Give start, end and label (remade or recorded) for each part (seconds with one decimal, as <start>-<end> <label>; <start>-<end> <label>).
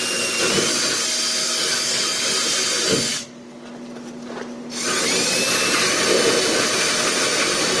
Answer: 0.0-1.4 recorded; 1.4-2.4 remade; 2.4-3.1 recorded; 3.1-3.7 remade; 3.7-7.8 recorded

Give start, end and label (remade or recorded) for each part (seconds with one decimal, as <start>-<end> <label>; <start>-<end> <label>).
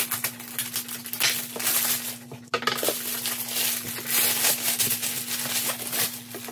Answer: 0.0-6.5 recorded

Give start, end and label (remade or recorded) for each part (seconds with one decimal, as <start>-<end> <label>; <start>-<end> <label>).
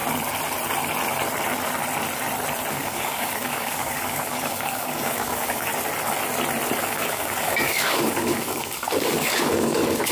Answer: 0.0-2.7 recorded; 2.7-5.7 remade; 5.7-6.8 recorded; 6.8-10.1 remade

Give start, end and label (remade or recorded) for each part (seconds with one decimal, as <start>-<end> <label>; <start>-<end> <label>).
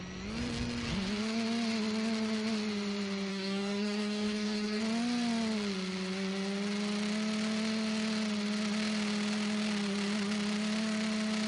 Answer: 0.0-3.3 recorded; 3.3-4.8 remade; 4.8-11.5 recorded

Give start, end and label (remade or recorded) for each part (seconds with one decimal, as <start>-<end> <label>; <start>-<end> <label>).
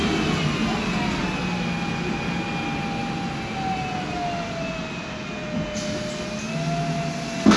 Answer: 0.0-7.6 recorded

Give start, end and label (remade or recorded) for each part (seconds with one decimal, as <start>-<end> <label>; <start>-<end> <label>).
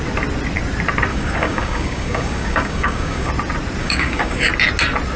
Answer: 0.0-1.1 recorded; 1.1-3.3 remade; 3.3-3.8 recorded; 3.8-4.5 remade; 4.5-5.2 recorded